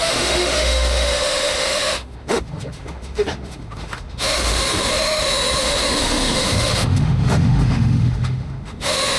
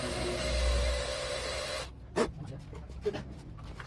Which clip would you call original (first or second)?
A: second